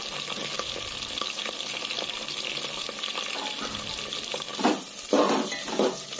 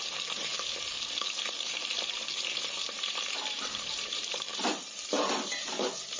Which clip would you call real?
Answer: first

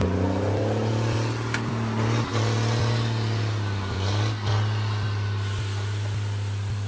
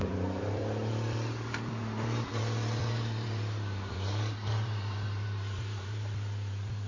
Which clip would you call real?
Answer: first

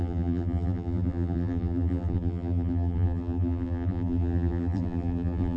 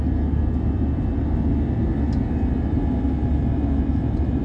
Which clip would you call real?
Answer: second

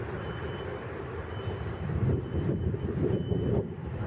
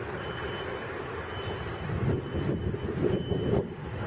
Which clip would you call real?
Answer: second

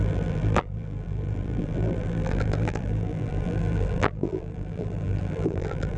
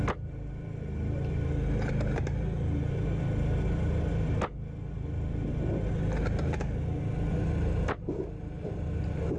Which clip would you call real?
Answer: second